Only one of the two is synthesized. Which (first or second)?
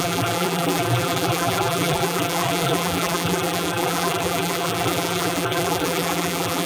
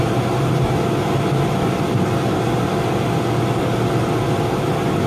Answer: first